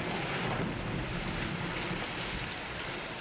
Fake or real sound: real